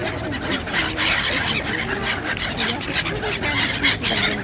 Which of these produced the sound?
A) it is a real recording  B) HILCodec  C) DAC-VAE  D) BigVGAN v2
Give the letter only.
A